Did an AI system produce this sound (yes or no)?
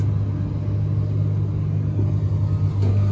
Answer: no